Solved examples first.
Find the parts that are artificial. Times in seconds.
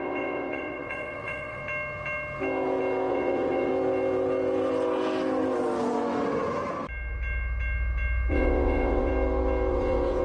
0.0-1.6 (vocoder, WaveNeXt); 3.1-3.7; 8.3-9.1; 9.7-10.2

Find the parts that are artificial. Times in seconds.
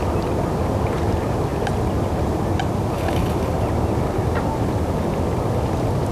none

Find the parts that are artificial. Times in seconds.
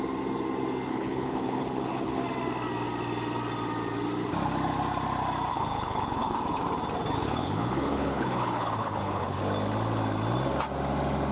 0.9-2.2 (codec, HILCodec); 5.5-6.6; 7.2-9.4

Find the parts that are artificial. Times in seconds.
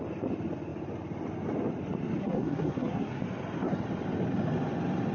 2.2-3.2 (codec, SNAC)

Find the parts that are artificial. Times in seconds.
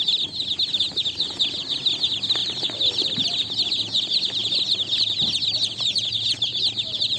2.4-3.2 (vocoder, BigVGAN v2); 4.4-7.2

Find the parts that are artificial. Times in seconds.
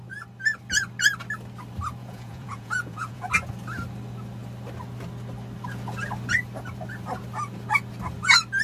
2.0-3.3 (vocoder, Vocos)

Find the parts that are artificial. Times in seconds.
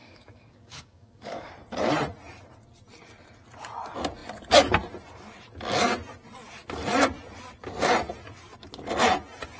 0.0-1.5 (codec, DAC)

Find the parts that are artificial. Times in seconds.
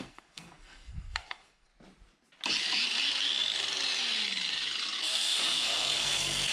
0.0-1.7 (codec, SNAC); 5.0-6.5